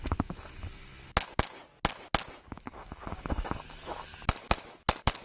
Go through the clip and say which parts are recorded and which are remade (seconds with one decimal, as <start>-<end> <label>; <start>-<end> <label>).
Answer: 0.0-1.6 remade; 1.6-2.5 recorded; 2.5-5.2 remade